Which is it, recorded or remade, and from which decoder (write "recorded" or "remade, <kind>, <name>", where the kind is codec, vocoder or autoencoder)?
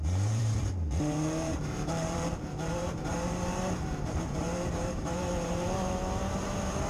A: remade, vocoder, BigVGAN v2